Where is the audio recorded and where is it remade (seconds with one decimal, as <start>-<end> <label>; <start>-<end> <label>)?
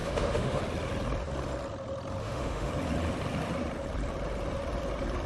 0.0-0.6 remade; 0.6-2.2 recorded; 2.2-2.7 remade; 2.7-5.3 recorded